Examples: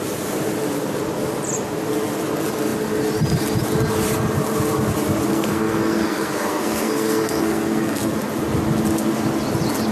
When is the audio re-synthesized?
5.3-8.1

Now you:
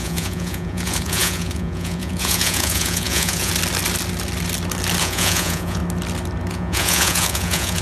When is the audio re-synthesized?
0.0-3.5; 5.0-5.8; 6.5-7.8